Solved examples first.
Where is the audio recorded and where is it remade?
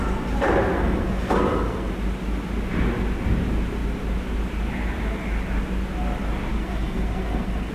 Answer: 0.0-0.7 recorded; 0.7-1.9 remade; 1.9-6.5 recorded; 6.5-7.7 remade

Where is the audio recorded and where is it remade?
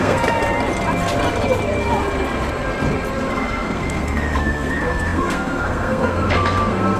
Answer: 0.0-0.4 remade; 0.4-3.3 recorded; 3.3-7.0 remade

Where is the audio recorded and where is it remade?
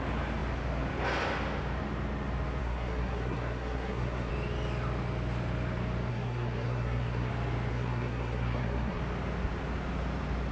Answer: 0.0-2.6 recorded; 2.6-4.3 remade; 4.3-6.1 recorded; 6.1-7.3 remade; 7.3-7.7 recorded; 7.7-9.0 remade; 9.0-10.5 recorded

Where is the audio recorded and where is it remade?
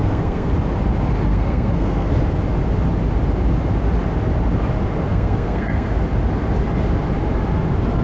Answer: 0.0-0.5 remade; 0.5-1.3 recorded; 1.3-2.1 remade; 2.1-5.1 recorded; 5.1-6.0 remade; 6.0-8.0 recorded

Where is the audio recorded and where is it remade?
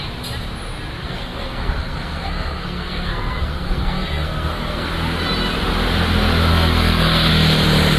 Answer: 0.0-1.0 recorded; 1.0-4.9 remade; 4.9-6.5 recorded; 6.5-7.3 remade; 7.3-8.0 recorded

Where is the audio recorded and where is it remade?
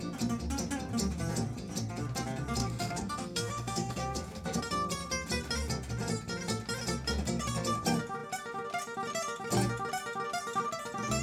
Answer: 0.0-2.6 recorded; 2.6-4.6 remade; 4.6-11.2 recorded